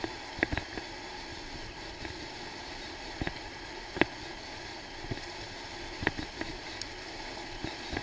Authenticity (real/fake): real